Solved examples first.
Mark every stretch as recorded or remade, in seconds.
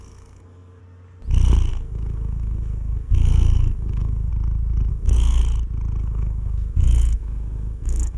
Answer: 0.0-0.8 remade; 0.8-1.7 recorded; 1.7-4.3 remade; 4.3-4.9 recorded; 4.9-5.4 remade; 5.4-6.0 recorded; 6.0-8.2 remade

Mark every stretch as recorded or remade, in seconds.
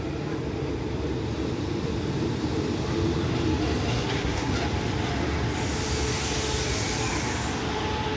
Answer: 0.0-3.9 recorded; 3.9-4.5 remade; 4.5-8.2 recorded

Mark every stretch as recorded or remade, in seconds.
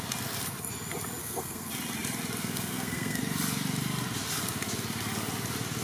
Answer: 0.0-1.2 recorded; 1.2-1.7 remade; 1.7-2.4 recorded; 2.4-3.2 remade; 3.2-5.8 recorded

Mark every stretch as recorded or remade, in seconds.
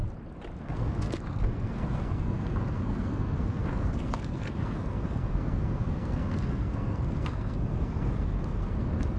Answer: 0.0-0.6 recorded; 0.6-9.2 remade